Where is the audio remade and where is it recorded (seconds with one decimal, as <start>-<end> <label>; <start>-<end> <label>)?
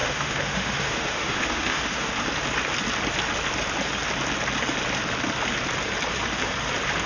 0.0-2.1 remade; 2.1-7.1 recorded